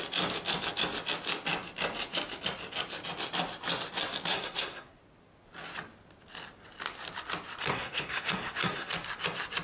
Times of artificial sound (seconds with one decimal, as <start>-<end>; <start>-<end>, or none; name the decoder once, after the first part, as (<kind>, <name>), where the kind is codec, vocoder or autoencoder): 4.3-5.0 (codec, SNAC); 7.7-8.9